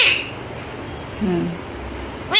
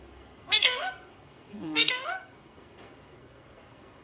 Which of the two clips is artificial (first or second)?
second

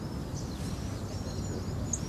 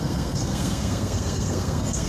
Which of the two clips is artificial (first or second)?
second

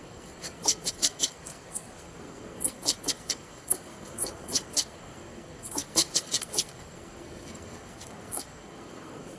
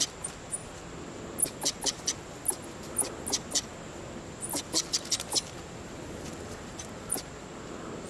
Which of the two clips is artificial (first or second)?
first